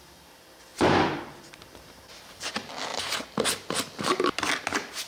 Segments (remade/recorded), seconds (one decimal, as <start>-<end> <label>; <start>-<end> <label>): 0.0-0.7 recorded; 0.7-2.5 remade; 2.5-5.1 recorded